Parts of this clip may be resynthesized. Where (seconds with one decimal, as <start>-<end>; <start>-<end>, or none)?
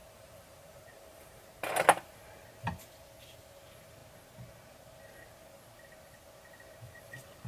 0.0-1.4